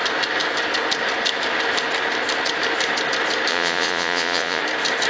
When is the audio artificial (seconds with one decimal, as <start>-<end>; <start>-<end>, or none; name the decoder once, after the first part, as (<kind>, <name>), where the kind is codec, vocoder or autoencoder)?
3.5-4.6 (vocoder, Vocos)